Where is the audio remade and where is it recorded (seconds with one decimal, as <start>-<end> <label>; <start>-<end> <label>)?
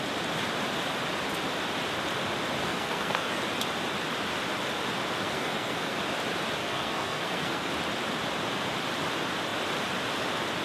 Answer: 0.0-2.6 recorded; 2.6-3.4 remade; 3.4-5.2 recorded; 5.2-6.0 remade; 6.0-6.6 recorded; 6.6-7.7 remade; 7.7-10.6 recorded